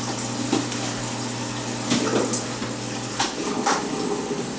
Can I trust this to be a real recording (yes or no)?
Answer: yes